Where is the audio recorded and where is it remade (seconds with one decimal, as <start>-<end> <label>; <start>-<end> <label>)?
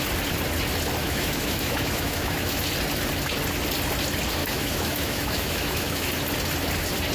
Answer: 0.0-1.0 recorded; 1.0-2.6 remade; 2.6-4.4 recorded; 4.4-6.1 remade; 6.1-7.1 recorded